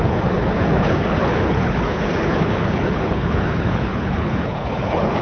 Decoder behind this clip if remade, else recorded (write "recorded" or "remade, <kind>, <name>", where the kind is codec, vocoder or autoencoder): remade, codec, HILCodec